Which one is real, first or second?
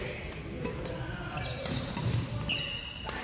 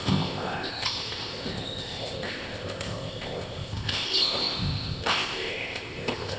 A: first